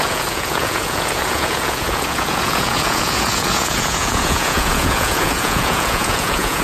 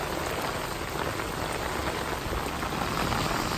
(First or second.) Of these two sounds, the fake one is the first